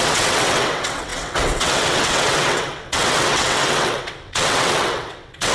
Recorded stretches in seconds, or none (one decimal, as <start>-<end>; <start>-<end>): none